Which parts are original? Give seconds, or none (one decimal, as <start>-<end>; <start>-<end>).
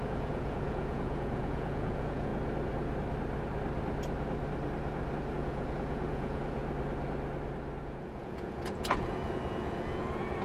2.3-5.3; 6.6-7.8